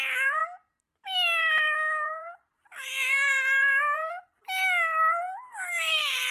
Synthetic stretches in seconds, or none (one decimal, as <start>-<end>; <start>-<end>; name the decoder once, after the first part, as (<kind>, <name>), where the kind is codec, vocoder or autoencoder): 0.0-0.4 (vocoder, BigVGAN v2); 1.4-4.4; 5.2-6.3